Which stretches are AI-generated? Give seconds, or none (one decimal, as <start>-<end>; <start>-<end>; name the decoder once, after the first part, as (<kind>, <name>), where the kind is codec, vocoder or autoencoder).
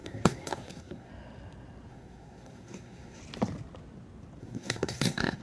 0.0-1.1 (codec, SNAC); 1.9-3.2; 4.4-5.4